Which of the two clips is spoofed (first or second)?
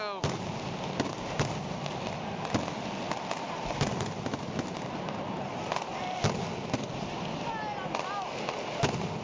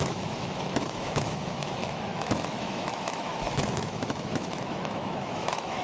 second